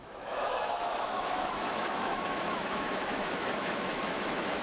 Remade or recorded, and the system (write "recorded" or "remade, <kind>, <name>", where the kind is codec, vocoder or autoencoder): remade, autoencoder, DAC-VAE